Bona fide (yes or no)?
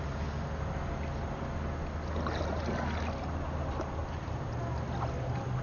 yes